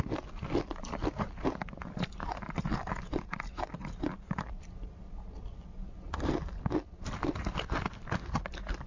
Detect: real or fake real